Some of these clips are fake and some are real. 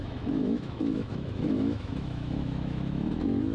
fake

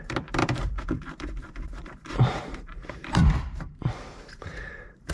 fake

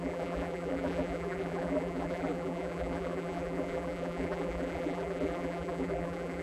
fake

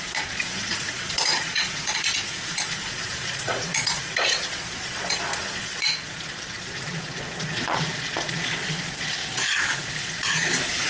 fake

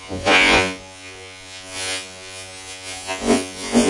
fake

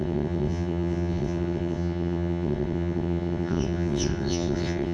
fake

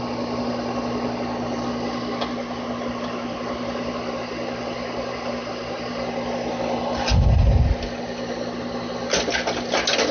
real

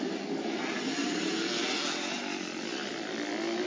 real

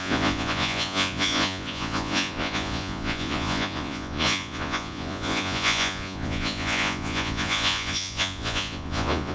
fake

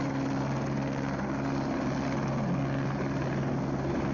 real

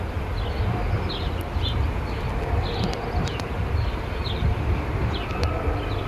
real